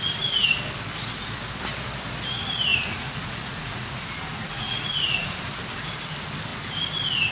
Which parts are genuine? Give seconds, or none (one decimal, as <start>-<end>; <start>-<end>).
0.0-2.7; 5.4-7.3